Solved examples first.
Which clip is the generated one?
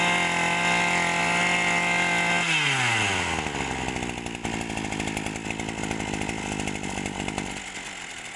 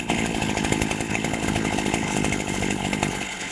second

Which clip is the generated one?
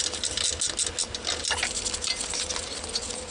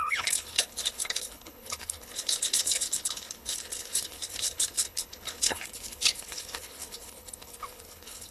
second